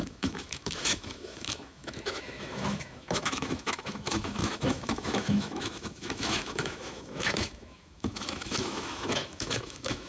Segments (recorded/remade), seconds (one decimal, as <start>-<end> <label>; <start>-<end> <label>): 0.0-10.1 remade